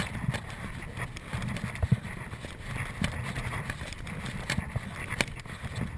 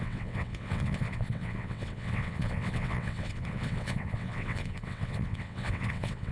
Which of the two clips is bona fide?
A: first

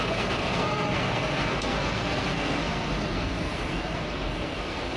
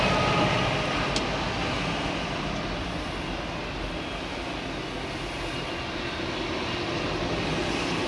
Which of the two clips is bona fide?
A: second